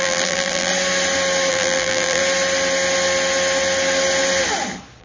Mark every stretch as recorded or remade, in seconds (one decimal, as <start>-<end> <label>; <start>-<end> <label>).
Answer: 0.0-0.7 remade; 0.7-1.5 recorded; 1.5-2.2 remade; 2.2-5.0 recorded